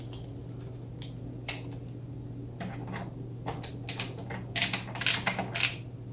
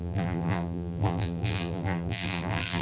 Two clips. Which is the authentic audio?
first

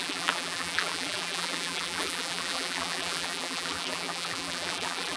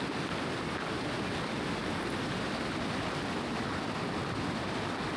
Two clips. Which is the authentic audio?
second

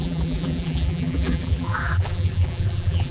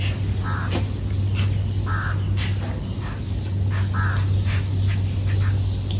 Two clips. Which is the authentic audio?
second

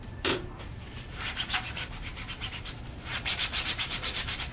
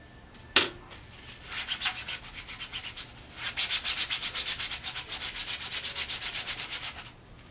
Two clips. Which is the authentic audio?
second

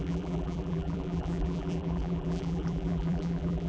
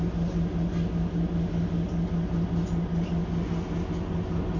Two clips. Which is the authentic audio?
second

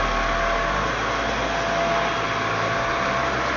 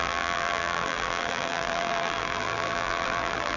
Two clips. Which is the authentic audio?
first